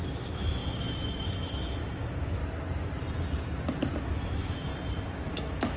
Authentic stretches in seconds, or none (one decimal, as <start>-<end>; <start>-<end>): 2.4-4.0; 4.7-5.3